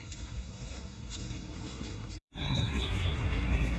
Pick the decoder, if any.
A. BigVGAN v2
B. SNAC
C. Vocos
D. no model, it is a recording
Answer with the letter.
B